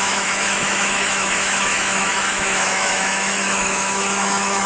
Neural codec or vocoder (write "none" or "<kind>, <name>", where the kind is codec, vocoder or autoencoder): autoencoder, DAC-VAE